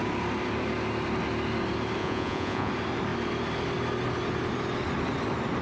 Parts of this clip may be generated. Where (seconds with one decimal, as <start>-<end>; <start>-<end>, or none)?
2.0-2.7